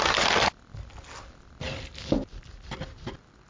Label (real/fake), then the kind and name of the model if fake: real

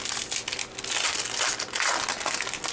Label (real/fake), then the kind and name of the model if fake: real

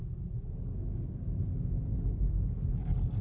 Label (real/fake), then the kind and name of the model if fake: real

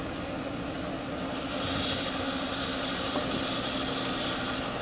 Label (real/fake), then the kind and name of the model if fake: real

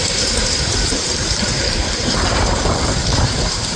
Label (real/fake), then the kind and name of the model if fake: fake, vocoder, BigVGAN v2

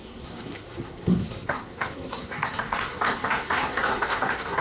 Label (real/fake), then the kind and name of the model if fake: fake, codec, SNAC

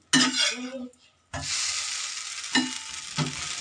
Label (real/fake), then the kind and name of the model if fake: real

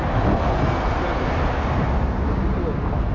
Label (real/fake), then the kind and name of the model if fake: real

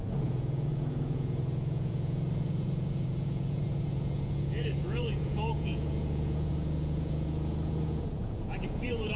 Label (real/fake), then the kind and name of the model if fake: fake, vocoder, Vocos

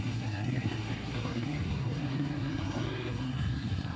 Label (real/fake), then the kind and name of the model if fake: fake, codec, SNAC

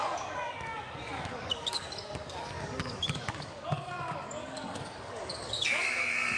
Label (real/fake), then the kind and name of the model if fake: fake, codec, DAC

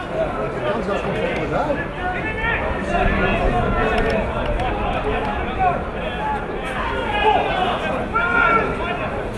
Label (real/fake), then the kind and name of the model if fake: real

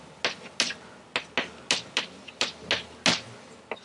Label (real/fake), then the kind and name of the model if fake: real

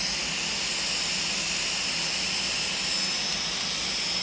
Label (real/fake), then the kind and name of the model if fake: real